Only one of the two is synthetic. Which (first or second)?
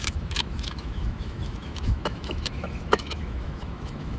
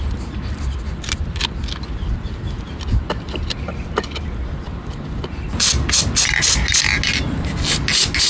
first